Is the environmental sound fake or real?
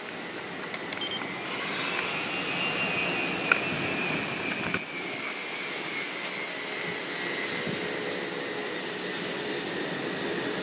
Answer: real